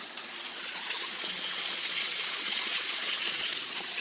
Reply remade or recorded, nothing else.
remade